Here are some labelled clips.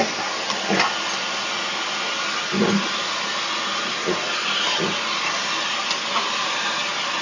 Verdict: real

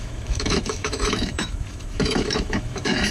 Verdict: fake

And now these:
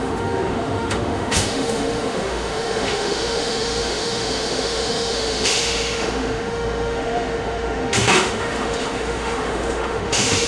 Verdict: fake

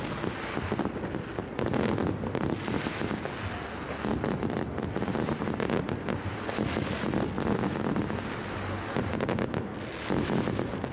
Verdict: real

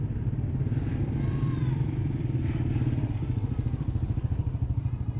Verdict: fake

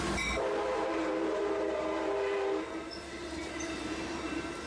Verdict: fake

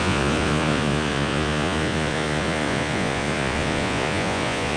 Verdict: fake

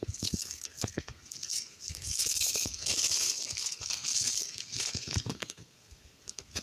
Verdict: fake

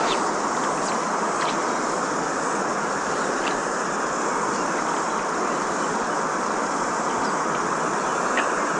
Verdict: real